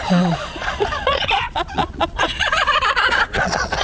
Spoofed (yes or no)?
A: yes